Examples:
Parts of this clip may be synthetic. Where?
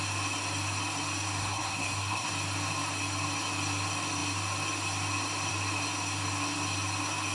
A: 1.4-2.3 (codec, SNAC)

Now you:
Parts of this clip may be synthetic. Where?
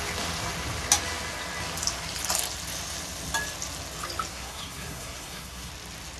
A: 4.3-5.7 (codec, SNAC)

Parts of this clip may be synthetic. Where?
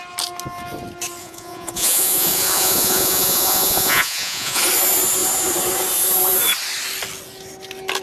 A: 1.2-4.6 (vocoder, Vocos)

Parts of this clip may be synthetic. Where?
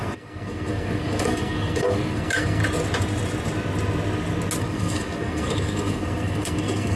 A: 0.0-2.6 (codec, SNAC); 4.6-7.0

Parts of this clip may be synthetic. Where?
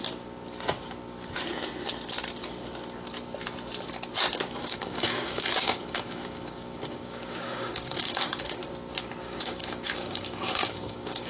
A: 4.6-8.6 (codec, DAC); 9.2-11.3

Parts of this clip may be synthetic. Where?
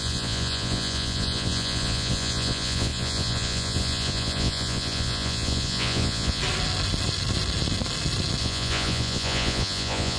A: 0.0-6.4 (vocoder, Vocos); 8.4-10.2